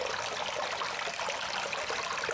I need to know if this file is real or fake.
real